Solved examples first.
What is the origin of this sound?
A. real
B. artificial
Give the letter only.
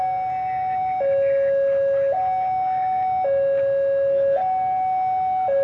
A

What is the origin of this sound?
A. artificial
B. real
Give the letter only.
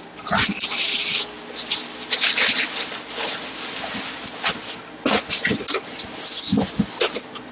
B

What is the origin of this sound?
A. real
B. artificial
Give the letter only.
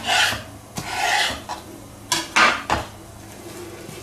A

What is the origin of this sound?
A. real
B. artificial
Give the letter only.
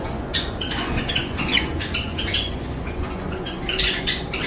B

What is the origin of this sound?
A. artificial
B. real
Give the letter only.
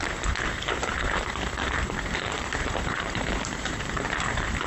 A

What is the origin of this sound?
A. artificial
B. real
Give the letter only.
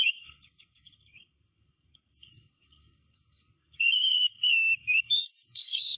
A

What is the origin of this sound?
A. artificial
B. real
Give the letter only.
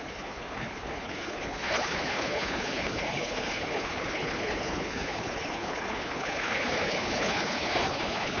A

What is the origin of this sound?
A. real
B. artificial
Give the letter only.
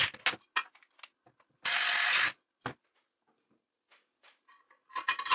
A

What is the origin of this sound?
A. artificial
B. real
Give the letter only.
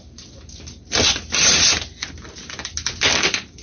B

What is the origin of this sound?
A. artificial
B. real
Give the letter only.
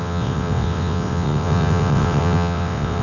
A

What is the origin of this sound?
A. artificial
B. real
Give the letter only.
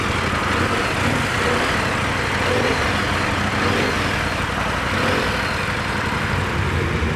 B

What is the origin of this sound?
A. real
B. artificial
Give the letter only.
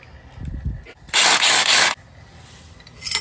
A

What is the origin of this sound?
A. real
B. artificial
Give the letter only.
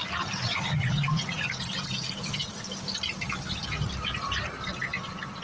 A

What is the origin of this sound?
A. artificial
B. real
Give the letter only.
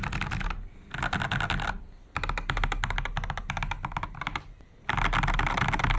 B